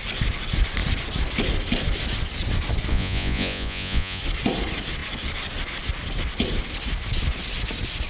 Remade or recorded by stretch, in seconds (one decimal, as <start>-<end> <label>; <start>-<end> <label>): 0.0-2.9 recorded; 2.9-4.2 remade; 4.2-8.1 recorded